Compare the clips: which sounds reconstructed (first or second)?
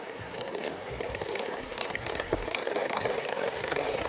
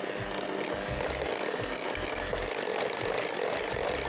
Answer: first